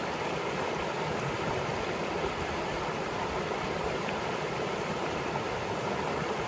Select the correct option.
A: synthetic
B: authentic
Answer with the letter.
A